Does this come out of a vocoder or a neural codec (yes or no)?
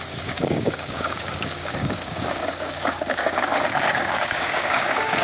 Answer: yes